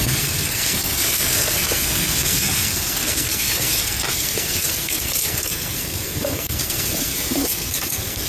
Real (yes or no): no